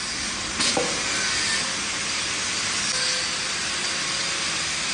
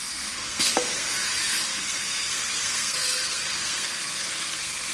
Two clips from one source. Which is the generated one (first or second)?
second